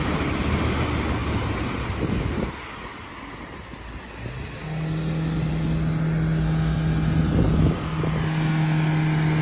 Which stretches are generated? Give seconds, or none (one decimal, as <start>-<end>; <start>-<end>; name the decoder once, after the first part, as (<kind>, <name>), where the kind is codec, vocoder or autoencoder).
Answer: none